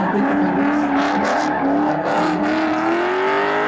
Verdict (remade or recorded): recorded